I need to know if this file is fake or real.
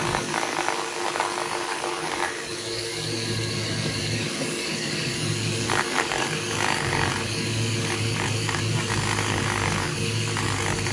fake